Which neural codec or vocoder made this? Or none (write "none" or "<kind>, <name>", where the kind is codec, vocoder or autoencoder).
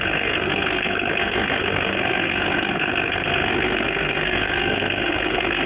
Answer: codec, SNAC